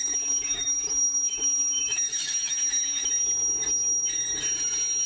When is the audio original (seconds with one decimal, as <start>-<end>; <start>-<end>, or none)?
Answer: 3.1-5.1